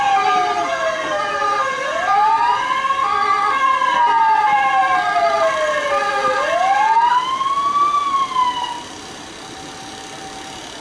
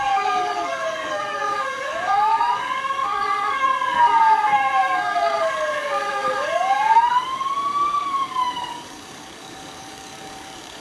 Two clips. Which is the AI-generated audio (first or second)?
second